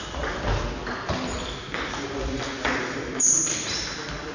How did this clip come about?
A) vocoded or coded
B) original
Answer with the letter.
B